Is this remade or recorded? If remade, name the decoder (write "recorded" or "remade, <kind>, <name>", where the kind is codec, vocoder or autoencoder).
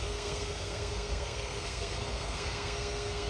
remade, codec, SNAC